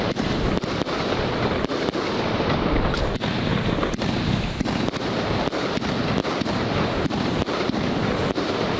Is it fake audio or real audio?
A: real